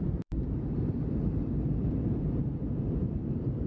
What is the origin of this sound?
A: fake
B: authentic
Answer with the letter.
A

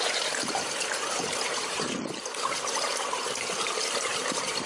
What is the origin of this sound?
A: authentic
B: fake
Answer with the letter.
B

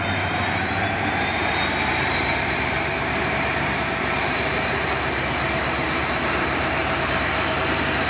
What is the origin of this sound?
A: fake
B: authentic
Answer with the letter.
A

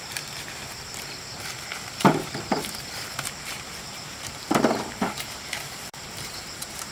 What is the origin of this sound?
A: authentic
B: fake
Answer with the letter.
B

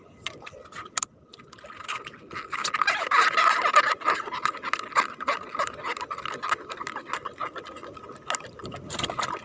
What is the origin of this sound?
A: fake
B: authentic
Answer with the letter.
B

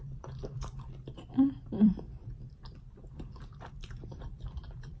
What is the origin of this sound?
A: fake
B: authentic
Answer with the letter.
A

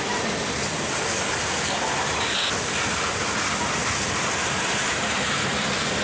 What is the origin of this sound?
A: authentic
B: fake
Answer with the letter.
A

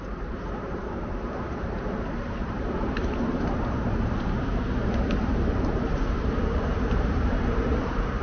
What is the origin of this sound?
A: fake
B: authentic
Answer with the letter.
A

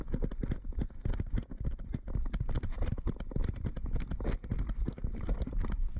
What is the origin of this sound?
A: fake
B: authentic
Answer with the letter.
B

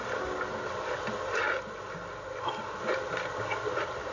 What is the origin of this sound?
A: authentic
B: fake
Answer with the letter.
A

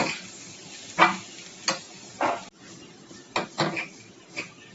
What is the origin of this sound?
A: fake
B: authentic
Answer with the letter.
B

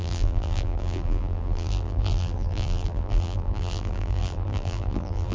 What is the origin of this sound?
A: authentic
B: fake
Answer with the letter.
B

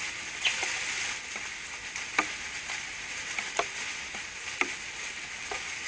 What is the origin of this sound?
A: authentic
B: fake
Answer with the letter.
A